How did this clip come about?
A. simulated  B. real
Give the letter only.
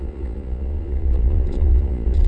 A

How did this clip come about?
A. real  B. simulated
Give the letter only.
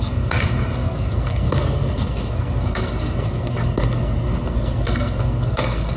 B